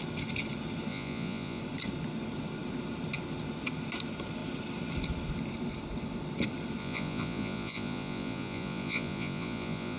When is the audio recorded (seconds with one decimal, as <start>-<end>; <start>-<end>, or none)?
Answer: 0.0-0.9; 1.6-6.8